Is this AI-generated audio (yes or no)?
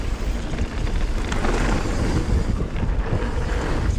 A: no